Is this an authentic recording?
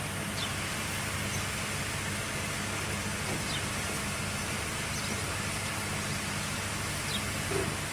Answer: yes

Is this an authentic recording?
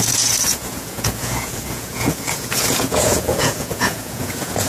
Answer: no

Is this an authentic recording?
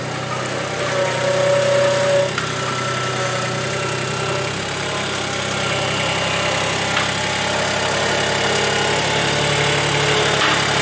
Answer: yes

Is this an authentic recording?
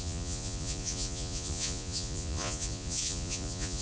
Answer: no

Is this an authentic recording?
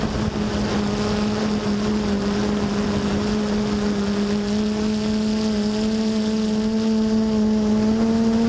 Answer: yes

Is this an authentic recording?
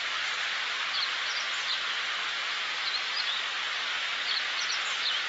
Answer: yes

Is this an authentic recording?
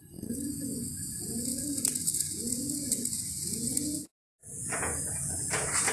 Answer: no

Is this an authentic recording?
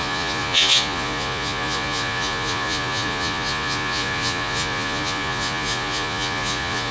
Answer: no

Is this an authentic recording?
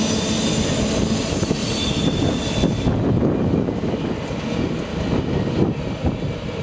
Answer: yes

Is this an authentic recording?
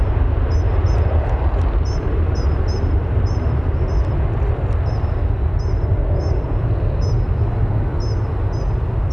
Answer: yes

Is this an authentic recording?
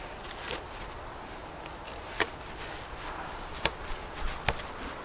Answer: yes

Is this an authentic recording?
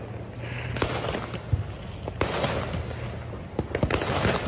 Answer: yes